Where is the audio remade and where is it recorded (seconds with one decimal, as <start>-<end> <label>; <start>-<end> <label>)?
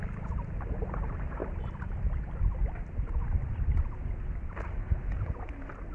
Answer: 0.0-5.9 recorded